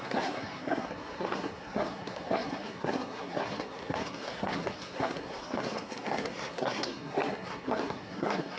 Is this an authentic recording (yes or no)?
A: no